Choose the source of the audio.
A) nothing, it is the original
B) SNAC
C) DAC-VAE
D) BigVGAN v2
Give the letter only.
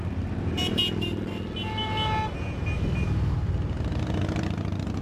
A